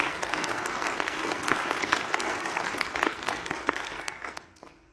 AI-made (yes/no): yes